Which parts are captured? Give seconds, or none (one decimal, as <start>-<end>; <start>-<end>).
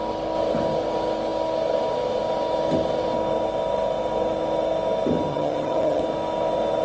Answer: 0.0-5.3; 6.0-6.8